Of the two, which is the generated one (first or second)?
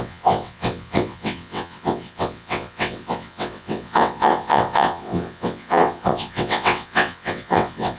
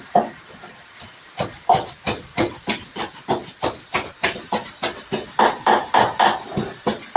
first